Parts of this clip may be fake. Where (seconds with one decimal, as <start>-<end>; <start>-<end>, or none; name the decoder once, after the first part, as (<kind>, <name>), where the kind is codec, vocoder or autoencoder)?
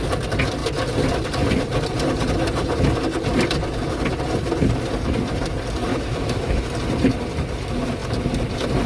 5.9-6.6 (autoencoder, DAC-VAE)